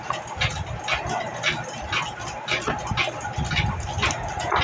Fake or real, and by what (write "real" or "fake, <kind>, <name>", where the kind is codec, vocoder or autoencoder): real